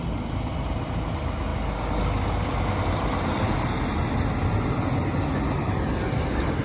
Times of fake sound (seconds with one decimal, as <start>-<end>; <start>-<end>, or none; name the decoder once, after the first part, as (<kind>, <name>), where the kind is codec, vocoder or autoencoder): none